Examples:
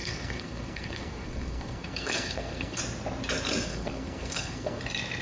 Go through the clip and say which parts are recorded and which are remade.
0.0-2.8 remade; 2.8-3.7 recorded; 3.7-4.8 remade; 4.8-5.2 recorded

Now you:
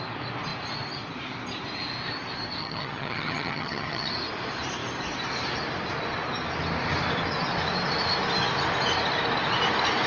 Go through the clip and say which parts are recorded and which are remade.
0.0-2.6 recorded; 2.6-4.1 remade; 4.1-10.1 recorded

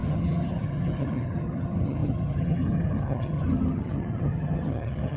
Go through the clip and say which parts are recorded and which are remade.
0.0-5.2 remade

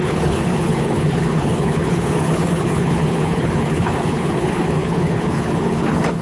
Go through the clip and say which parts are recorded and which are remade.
0.0-6.2 remade